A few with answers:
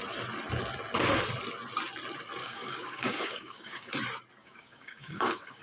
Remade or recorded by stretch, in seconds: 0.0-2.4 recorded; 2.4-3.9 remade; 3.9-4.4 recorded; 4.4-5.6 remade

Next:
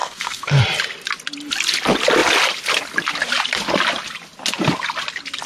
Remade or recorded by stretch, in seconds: 0.0-0.6 remade; 0.6-5.5 recorded

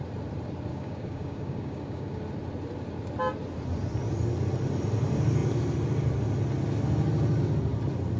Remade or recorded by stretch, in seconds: 0.0-0.7 recorded; 0.7-2.2 remade; 2.2-8.2 recorded

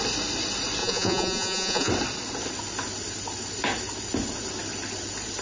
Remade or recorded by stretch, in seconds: 0.0-0.8 recorded; 0.8-1.9 remade; 1.9-5.4 recorded

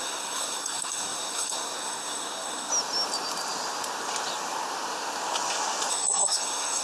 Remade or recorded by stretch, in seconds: 0.0-2.7 remade; 2.7-5.9 recorded; 5.9-6.8 remade

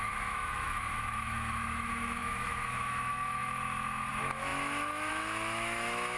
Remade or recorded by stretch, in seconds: 0.0-6.2 remade

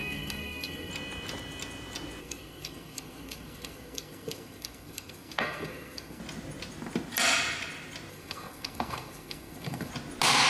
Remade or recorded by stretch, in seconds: 0.0-0.9 remade; 0.9-2.2 recorded; 2.2-6.2 remade; 6.2-8.1 recorded; 8.1-9.9 remade; 9.9-10.5 recorded